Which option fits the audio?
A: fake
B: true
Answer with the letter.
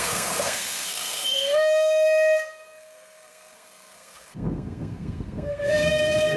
A